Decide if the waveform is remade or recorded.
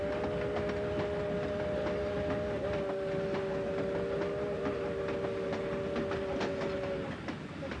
recorded